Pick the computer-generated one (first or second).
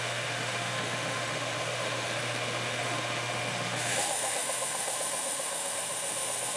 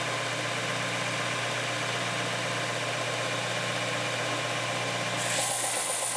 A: first